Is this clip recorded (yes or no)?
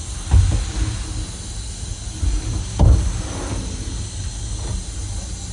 yes